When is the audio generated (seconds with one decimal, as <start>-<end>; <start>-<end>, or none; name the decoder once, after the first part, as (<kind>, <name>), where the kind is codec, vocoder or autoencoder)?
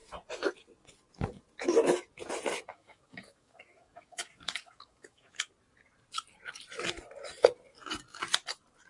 2.7-5.5 (codec, DAC)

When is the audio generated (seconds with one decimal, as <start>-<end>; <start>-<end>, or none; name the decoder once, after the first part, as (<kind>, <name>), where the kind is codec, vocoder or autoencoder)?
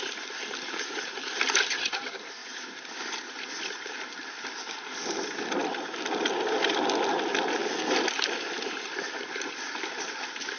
0.0-2.4 (vocoder, BigVGAN v2); 3.6-5.6; 6.7-10.6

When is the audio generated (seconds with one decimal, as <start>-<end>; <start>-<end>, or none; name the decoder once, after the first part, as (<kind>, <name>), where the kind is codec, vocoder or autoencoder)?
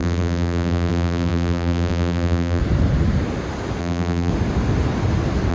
0.0-2.6 (vocoder, BigVGAN v2); 3.8-4.3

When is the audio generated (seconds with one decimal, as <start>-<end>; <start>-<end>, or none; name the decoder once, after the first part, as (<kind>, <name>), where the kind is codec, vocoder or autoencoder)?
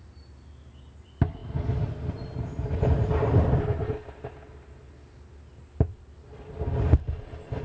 none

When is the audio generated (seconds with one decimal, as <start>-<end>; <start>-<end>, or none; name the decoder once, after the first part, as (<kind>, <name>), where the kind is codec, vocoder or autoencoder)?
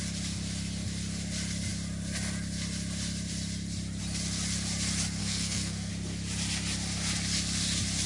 5.2-5.9 (codec, SNAC)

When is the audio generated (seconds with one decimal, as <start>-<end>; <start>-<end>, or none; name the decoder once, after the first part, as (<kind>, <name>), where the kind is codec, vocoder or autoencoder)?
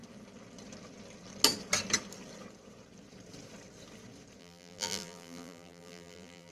4.4-6.5 (vocoder, BigVGAN v2)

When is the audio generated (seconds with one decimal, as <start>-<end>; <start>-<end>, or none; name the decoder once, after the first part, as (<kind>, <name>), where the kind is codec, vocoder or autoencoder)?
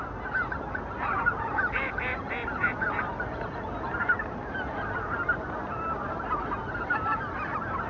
none